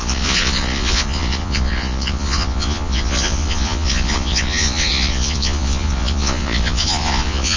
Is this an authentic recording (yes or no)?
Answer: no